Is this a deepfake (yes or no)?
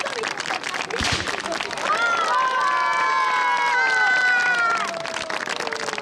no